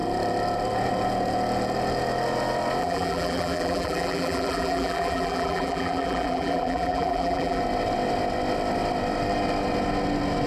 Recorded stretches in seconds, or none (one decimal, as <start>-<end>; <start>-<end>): 0.0-2.8; 7.6-10.5